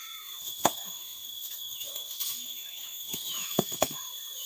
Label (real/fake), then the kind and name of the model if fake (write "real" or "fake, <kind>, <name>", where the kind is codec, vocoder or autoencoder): fake, autoencoder, DAC-VAE